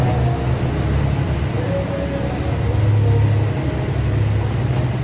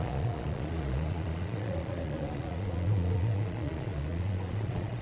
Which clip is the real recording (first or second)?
first